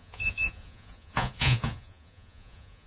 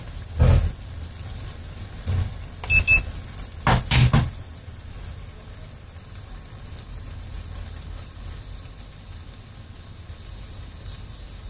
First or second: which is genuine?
second